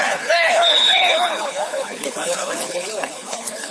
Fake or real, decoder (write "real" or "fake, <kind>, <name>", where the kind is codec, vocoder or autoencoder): fake, codec, HILCodec